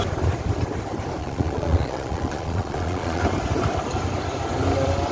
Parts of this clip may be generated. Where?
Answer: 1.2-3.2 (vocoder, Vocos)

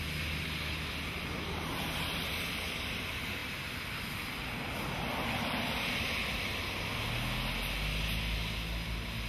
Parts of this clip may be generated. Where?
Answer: none